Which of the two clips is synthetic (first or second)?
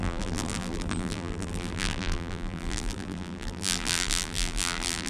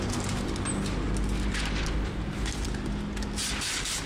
first